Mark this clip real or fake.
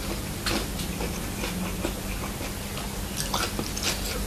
real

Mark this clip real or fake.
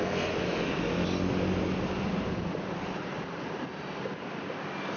real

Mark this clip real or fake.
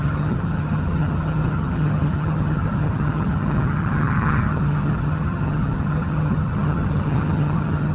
fake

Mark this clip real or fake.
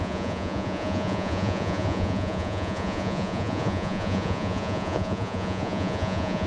fake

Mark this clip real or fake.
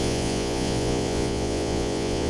fake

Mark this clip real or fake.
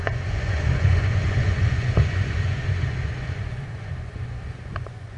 fake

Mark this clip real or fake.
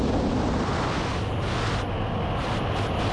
real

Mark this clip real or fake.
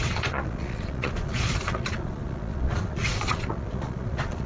fake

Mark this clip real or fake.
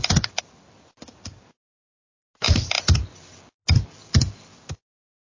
real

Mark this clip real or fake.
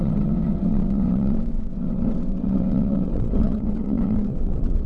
fake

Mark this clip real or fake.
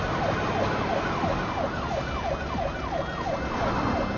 real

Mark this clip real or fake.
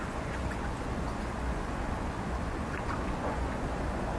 fake